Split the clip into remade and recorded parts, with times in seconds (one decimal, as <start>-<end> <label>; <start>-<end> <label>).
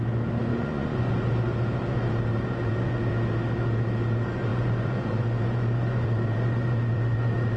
0.0-0.5 recorded; 0.5-1.1 remade; 1.1-2.3 recorded; 2.3-3.1 remade; 3.1-4.5 recorded; 4.5-7.6 remade